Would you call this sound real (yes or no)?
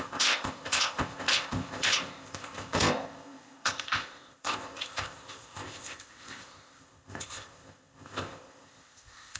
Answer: no